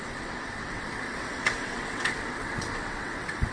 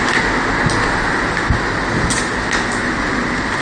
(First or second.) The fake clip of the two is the first